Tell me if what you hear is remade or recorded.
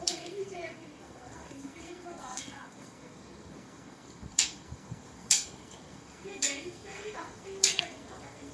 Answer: remade